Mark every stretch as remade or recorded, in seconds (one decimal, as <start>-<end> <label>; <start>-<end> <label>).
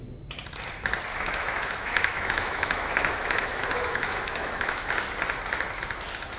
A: 0.0-1.1 recorded; 1.1-4.9 remade; 4.9-6.4 recorded